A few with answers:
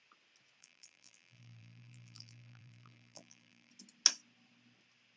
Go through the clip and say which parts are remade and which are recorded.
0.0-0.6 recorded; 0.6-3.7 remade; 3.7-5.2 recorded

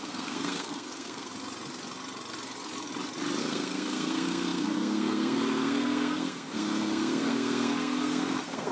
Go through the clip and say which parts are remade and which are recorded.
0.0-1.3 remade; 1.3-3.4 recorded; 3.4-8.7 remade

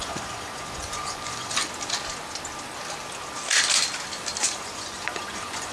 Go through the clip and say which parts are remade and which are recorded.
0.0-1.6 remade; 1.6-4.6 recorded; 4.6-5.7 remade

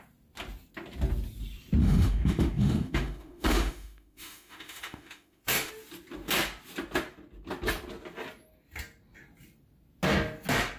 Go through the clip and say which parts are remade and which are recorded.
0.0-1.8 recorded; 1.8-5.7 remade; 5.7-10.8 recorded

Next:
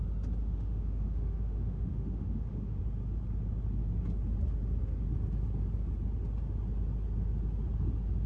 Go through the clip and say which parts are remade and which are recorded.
0.0-0.4 recorded; 0.4-2.8 remade; 2.8-8.3 recorded

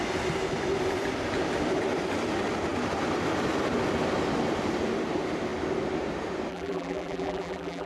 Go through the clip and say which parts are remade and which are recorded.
0.0-6.5 recorded; 6.5-7.9 remade

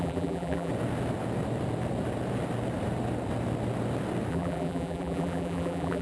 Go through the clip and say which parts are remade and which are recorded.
0.0-0.7 remade; 0.7-4.3 recorded; 4.3-6.0 remade